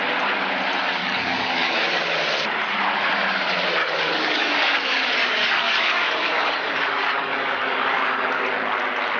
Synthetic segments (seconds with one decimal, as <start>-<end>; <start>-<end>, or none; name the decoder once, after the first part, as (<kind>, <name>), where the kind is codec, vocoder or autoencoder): 1.0-2.0 (codec, DAC); 3.8-8.4